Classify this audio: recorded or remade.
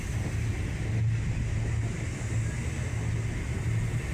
recorded